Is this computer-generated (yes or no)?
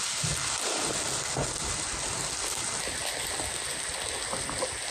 no